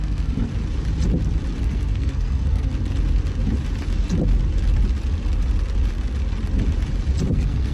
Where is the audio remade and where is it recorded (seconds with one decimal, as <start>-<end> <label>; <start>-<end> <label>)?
0.0-0.5 remade; 0.5-1.6 recorded; 1.6-2.7 remade; 2.7-7.3 recorded; 7.3-7.7 remade